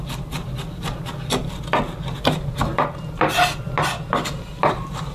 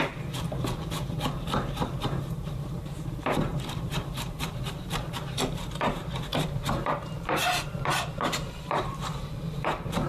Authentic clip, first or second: first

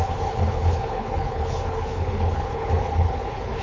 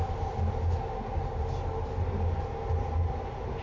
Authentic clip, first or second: second